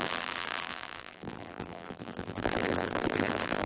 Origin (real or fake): fake